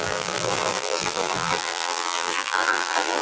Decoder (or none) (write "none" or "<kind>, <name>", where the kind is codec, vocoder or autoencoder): vocoder, BigVGAN v2